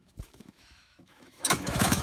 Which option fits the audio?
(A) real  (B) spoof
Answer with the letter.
B